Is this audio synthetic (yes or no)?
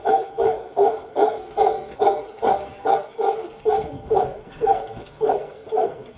yes